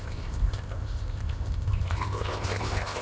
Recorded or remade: remade